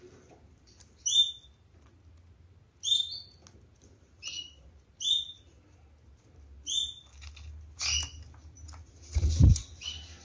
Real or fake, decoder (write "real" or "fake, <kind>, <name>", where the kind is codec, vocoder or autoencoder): real